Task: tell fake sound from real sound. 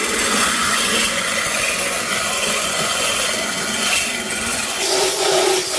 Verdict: fake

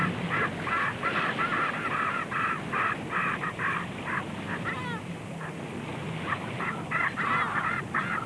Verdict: real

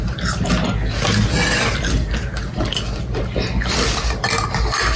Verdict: real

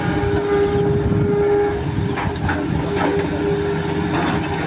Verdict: real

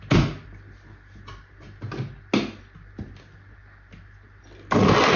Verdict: real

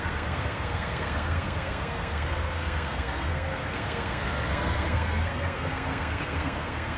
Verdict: fake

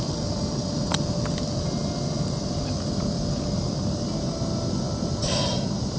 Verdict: real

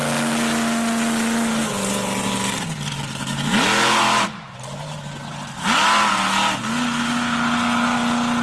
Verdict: real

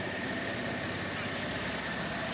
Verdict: real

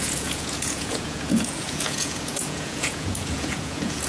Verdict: fake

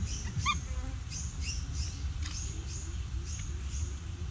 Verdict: real